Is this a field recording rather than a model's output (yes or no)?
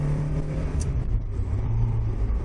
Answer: no